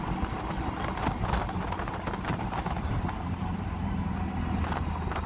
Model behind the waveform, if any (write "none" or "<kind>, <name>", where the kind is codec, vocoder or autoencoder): none